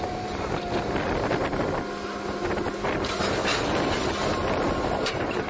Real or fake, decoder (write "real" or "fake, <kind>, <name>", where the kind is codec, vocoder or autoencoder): real